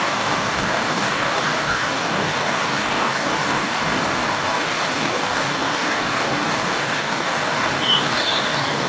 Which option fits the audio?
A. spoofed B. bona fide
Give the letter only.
A